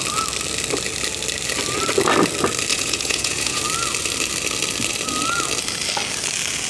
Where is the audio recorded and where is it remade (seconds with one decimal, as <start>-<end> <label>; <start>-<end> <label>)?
0.0-2.7 recorded; 2.7-3.6 remade; 3.6-6.7 recorded